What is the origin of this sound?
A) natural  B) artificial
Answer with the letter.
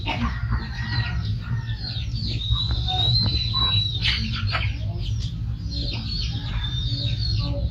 A